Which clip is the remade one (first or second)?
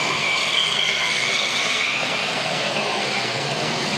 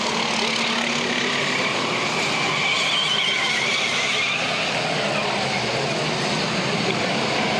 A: first